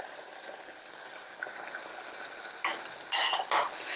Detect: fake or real real